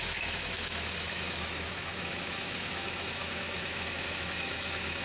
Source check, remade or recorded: remade